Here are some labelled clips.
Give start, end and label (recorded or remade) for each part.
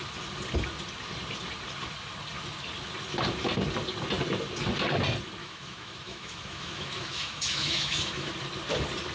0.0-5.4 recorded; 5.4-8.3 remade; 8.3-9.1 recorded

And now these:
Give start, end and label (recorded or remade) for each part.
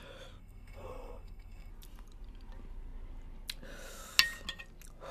0.0-0.4 recorded; 0.4-1.7 remade; 1.7-5.1 recorded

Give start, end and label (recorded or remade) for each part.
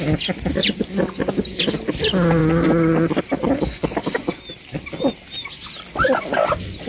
0.0-6.9 recorded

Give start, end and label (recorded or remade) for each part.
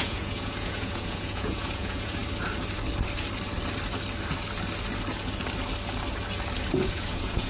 0.0-2.2 remade; 2.2-6.7 recorded; 6.7-7.5 remade